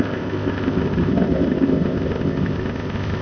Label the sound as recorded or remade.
remade